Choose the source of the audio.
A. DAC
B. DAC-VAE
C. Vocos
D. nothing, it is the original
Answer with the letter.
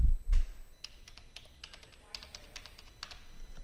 D